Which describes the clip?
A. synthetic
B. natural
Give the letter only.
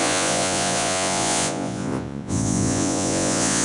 A